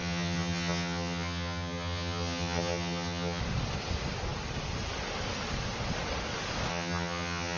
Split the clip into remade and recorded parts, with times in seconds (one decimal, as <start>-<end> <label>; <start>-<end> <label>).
0.0-3.4 remade; 3.4-6.7 recorded; 6.7-7.6 remade